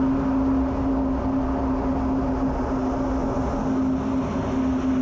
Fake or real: real